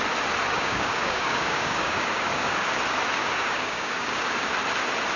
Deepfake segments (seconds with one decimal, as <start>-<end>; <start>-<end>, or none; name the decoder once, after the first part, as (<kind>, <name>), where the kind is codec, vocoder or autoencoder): 0.5-2.8 (codec, DAC); 3.2-4.5